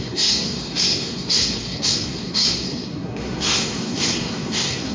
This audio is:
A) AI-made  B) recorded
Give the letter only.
A